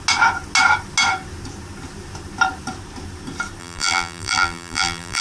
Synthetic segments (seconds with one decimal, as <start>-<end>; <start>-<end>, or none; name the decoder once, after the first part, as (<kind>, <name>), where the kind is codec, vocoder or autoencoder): 3.6-5.2 (vocoder, BigVGAN v2)